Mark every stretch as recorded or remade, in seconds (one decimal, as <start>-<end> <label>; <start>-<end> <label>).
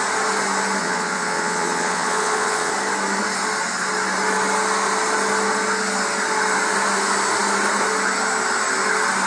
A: 0.0-0.8 recorded; 0.8-2.7 remade; 2.7-9.3 recorded